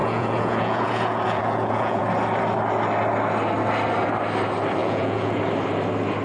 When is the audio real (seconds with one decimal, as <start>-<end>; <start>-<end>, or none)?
2.0-4.8; 5.4-6.2